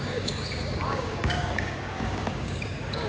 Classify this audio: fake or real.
fake